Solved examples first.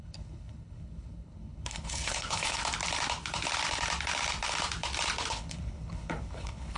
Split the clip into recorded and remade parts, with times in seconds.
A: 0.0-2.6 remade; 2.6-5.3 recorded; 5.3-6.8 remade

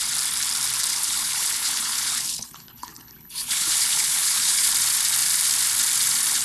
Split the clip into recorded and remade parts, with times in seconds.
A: 0.0-0.9 recorded; 0.9-4.7 remade; 4.7-6.4 recorded

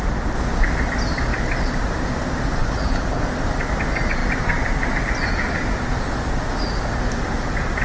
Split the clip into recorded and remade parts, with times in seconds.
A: 0.0-2.6 recorded; 2.6-3.2 remade; 3.2-7.8 recorded

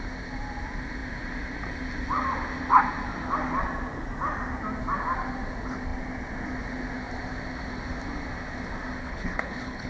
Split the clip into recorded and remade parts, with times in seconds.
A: 0.0-9.0 recorded; 9.0-9.9 remade

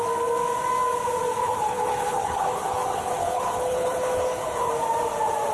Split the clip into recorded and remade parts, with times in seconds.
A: 0.0-1.4 recorded; 1.4-4.7 remade; 4.7-5.5 recorded